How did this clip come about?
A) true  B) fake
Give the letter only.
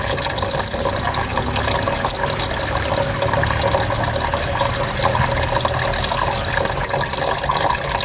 A